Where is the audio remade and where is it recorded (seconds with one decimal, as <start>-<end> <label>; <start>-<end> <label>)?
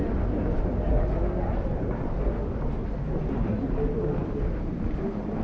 0.0-4.2 recorded; 4.2-5.4 remade